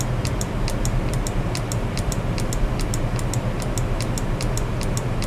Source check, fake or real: real